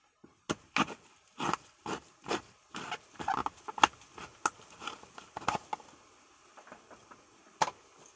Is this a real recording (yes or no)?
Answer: yes